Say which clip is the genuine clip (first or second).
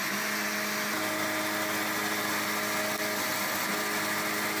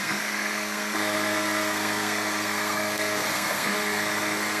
first